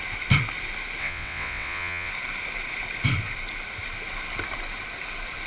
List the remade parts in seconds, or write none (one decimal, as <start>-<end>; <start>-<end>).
1.0-2.1